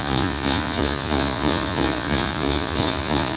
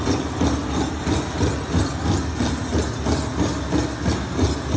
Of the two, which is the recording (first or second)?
second